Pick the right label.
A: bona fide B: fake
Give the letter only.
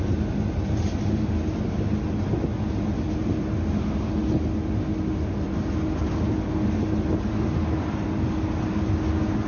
A